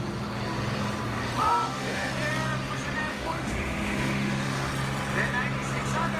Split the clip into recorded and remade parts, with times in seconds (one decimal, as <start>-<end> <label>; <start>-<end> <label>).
0.0-1.4 recorded; 1.4-2.1 remade; 2.1-3.1 recorded; 3.1-4.7 remade; 4.7-6.2 recorded

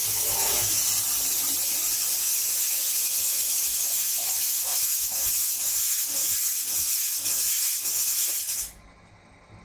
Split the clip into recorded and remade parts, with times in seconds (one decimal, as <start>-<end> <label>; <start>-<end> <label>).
0.0-0.8 remade; 0.8-2.2 recorded; 2.2-9.6 remade

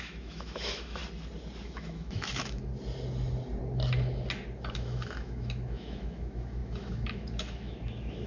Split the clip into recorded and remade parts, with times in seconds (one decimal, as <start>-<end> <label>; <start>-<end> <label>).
0.0-1.0 remade; 1.0-1.6 recorded; 1.6-2.7 remade; 2.7-4.7 recorded; 4.7-8.3 remade

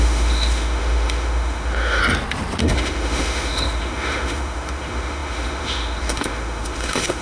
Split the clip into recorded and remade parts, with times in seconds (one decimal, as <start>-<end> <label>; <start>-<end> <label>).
0.0-2.0 remade; 2.0-2.6 recorded; 2.6-7.2 remade

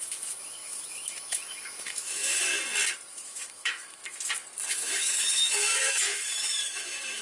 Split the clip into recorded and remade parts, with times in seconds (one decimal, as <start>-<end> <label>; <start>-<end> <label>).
0.0-2.5 remade; 2.5-3.1 recorded; 3.1-4.0 remade; 4.0-4.7 recorded; 4.7-7.2 remade

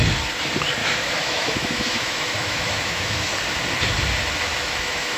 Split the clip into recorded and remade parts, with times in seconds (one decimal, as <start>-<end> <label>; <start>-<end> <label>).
0.0-0.8 recorded; 0.8-3.3 remade; 3.3-4.5 recorded; 4.5-5.2 remade